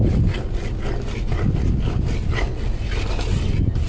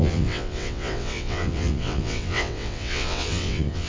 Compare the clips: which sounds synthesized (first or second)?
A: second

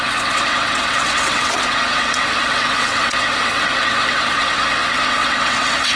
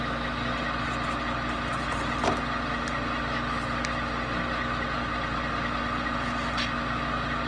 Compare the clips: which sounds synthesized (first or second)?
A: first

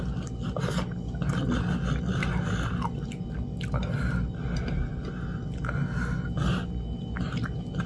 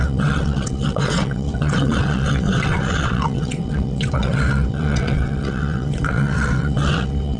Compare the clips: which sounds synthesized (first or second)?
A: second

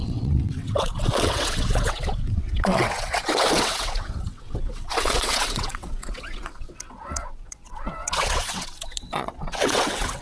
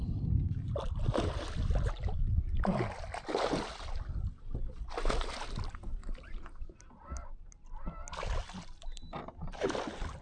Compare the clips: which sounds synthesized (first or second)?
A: first